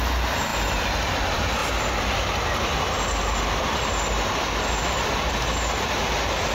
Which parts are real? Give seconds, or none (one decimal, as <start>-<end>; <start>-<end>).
0.0-6.5